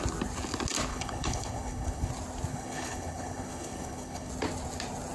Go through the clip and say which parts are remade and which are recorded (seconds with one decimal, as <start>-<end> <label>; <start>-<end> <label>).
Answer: 0.0-0.9 recorded; 0.9-2.1 remade; 2.1-2.5 recorded; 2.5-4.3 remade; 4.3-5.1 recorded